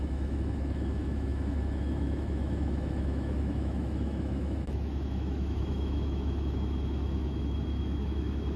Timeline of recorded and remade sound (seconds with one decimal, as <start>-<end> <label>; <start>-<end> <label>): 0.0-8.6 remade